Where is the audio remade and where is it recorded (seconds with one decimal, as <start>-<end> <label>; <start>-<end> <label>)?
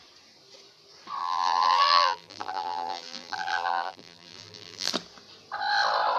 0.0-1.2 recorded; 1.2-4.9 remade; 4.9-6.2 recorded